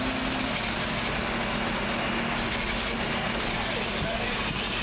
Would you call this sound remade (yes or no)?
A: no